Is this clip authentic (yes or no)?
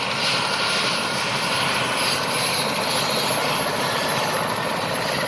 yes